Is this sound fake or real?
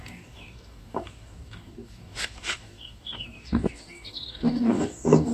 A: fake